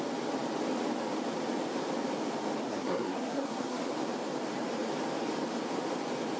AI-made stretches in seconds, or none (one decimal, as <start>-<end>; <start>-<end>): 2.6-3.9

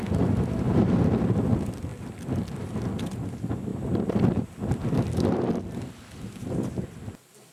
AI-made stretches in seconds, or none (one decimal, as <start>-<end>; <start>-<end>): none